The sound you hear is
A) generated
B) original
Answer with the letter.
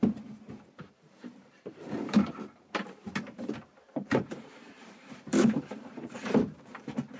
A